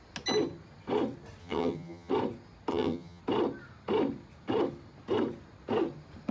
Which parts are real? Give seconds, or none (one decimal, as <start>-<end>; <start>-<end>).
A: 0.0-1.4; 2.1-2.7; 3.2-6.3